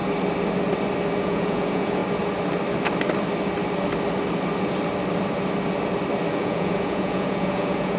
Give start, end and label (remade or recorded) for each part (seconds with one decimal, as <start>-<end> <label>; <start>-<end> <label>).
0.0-1.2 recorded; 1.2-2.0 remade; 2.0-6.3 recorded; 6.3-8.0 remade